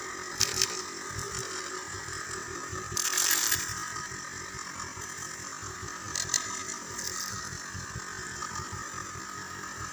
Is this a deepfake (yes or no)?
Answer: yes